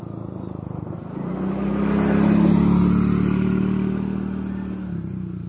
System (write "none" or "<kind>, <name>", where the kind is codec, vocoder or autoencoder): none